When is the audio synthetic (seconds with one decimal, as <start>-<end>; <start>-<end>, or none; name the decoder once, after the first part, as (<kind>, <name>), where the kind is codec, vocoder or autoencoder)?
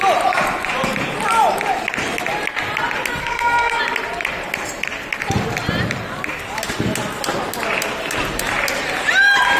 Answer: 3.2-3.8 (codec, SNAC)